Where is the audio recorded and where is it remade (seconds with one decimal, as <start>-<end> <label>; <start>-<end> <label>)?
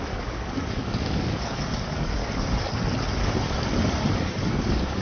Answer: 0.0-2.2 remade; 2.2-4.1 recorded; 4.1-5.0 remade